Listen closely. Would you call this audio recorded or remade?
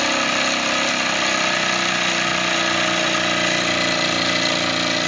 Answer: recorded